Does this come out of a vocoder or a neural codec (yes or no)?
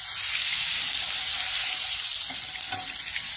no